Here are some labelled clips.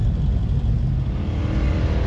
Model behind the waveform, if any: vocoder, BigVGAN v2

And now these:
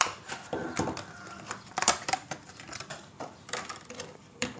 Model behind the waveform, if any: vocoder, BigVGAN v2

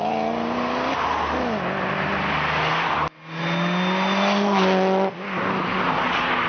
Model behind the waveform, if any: none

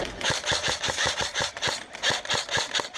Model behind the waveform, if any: none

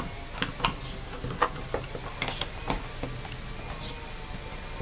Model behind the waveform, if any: none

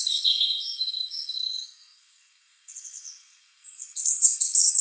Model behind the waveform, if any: codec, SNAC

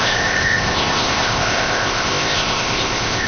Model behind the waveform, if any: codec, ZipCodec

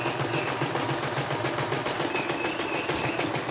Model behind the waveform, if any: none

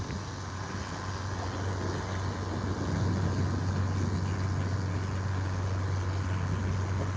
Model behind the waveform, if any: none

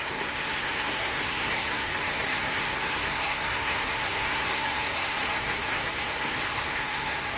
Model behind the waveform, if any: codec, SNAC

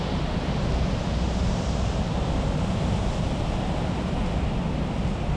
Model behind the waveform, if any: none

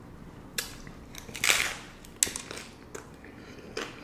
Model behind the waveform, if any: none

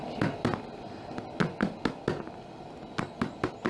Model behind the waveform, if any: none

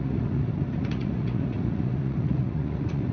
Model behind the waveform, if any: vocoder, Vocos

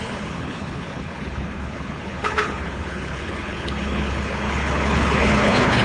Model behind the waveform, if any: codec, HILCodec